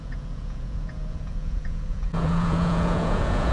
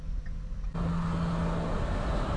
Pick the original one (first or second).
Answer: second